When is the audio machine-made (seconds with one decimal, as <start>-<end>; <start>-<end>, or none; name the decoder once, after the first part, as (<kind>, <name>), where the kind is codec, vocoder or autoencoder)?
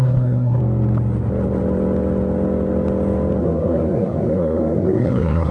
0.0-0.6 (codec, SNAC); 3.4-5.5